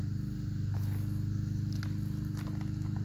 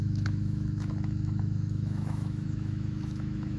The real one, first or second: first